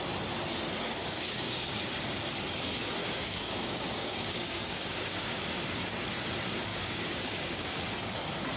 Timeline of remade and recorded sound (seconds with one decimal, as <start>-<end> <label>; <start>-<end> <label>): 0.0-1.0 recorded; 1.0-1.8 remade; 1.8-3.0 recorded; 3.0-5.4 remade; 5.4-6.7 recorded; 6.7-7.8 remade; 7.8-8.6 recorded